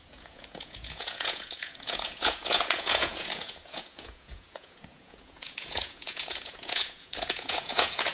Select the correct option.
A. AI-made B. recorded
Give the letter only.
A